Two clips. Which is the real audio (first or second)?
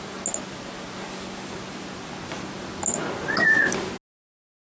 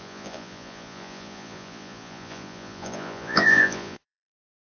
first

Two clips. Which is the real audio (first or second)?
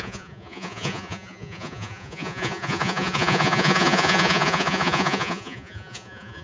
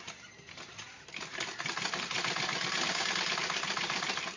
second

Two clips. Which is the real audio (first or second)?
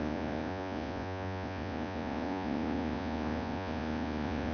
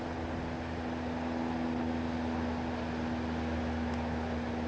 second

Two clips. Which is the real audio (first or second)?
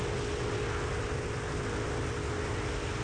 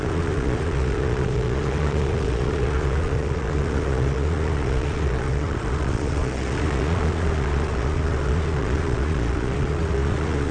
first